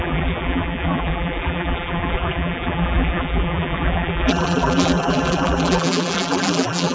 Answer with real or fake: fake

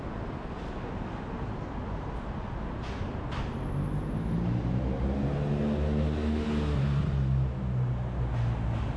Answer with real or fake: real